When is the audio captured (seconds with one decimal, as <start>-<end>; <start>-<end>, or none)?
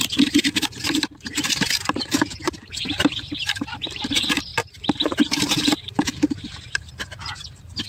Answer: none